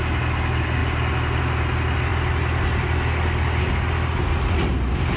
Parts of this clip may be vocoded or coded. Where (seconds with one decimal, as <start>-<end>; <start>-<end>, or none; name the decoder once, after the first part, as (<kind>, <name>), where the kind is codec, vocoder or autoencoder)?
none